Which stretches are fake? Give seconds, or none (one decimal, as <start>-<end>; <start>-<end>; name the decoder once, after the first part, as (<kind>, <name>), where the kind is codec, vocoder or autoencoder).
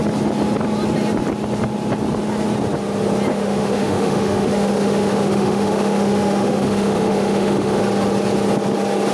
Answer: 3.3-7.8 (autoencoder, DAC-VAE)